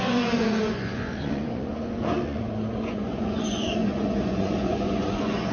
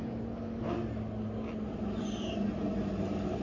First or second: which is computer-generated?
first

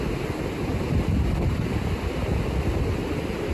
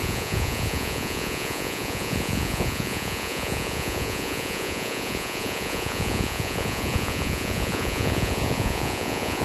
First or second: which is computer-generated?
second